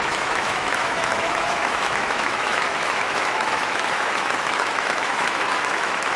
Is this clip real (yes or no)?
no